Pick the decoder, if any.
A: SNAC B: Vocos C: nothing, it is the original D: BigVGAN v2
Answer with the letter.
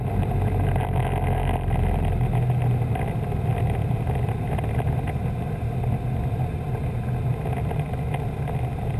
C